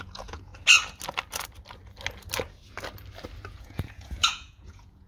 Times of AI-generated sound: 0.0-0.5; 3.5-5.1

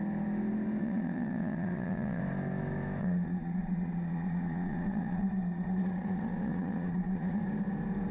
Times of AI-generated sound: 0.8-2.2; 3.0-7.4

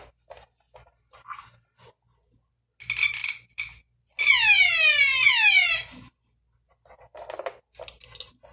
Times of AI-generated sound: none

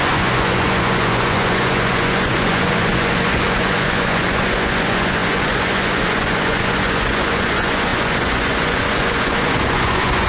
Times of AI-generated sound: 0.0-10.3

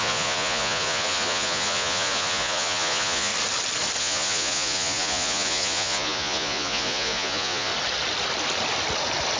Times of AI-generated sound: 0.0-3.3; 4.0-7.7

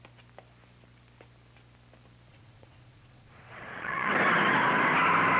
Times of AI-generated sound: 2.3-4.1